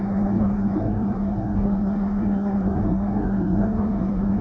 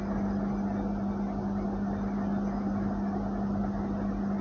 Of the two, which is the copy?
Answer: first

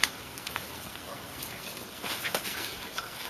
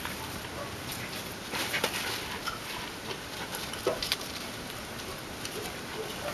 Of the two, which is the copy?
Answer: first